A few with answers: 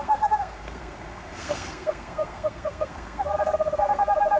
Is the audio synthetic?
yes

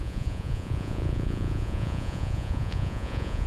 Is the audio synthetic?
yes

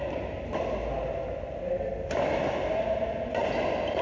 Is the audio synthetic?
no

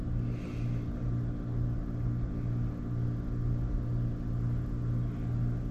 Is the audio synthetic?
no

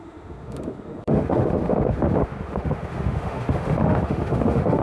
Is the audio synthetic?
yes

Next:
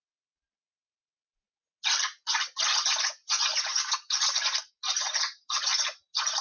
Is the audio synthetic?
no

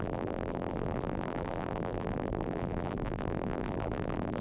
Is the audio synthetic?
yes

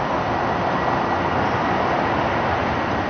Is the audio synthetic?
no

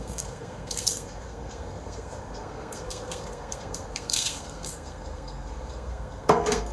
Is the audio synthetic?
yes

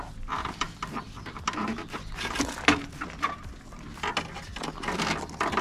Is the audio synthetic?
no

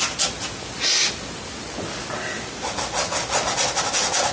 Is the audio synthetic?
no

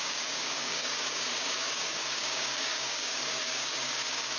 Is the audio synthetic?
yes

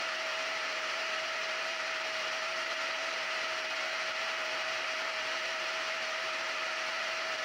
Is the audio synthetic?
yes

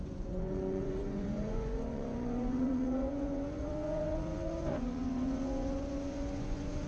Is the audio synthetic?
yes